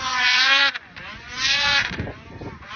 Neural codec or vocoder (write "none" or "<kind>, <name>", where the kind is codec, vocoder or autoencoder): vocoder, Vocos